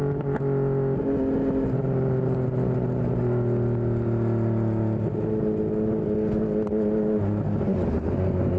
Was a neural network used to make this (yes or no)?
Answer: no